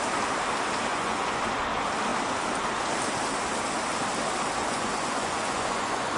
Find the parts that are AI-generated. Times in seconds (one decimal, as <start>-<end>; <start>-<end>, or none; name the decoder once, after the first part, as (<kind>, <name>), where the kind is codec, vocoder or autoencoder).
0.9-1.4 (vocoder, Vocos); 4.6-6.2